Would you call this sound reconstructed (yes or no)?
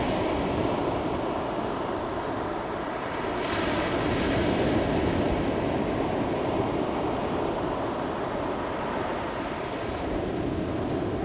no